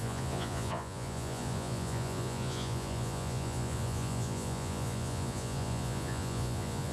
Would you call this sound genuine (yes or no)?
no